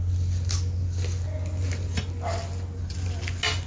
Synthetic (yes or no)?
no